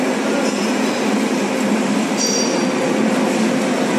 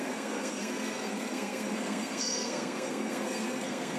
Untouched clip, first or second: first